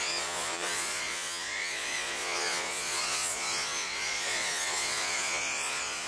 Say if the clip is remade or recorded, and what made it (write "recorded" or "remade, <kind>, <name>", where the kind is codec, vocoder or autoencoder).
remade, vocoder, Vocos